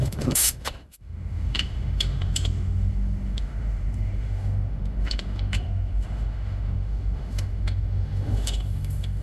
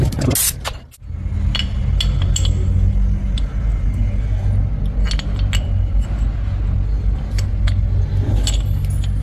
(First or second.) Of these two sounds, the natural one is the second